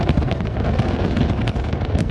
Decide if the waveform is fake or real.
fake